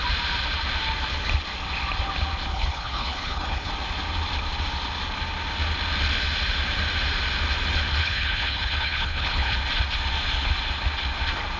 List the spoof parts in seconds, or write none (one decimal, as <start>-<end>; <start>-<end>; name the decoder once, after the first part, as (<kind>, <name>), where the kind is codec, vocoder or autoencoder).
2.5-3.7 (codec, HILCodec); 8.0-9.5